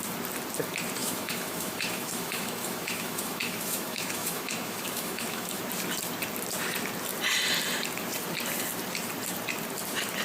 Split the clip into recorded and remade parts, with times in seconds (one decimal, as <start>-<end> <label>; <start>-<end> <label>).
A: 0.0-1.0 recorded; 1.0-5.6 remade; 5.6-10.2 recorded